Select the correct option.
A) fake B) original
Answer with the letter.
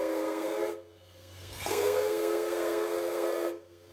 A